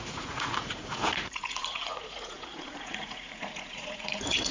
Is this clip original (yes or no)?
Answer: no